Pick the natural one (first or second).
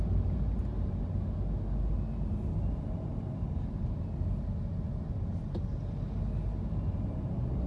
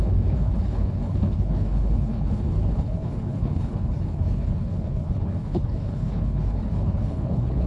first